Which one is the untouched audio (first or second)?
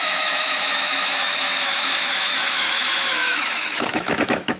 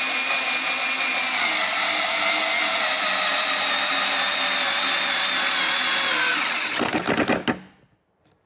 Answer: second